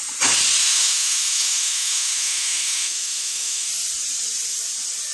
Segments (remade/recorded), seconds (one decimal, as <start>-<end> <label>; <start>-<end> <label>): 0.0-0.6 recorded; 0.6-3.7 remade; 3.7-5.1 recorded